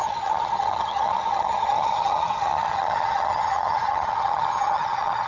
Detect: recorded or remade remade